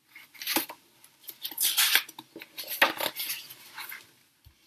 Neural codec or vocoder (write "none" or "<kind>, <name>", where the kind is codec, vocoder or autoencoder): none